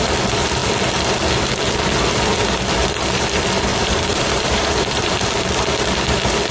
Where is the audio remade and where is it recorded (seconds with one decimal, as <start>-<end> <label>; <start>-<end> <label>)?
0.0-3.7 recorded; 3.7-5.1 remade; 5.1-6.5 recorded